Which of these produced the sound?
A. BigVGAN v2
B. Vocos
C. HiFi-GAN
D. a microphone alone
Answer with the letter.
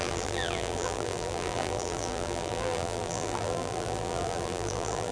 A